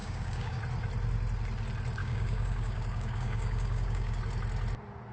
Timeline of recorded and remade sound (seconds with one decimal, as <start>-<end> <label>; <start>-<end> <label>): 0.0-0.6 remade; 0.6-2.0 recorded; 2.0-4.2 remade; 4.2-5.1 recorded